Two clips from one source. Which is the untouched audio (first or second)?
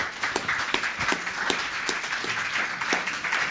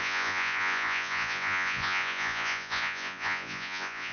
first